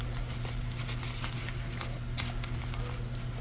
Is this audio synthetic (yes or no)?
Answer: no